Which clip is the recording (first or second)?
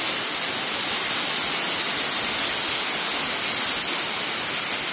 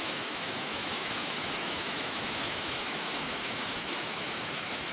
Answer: first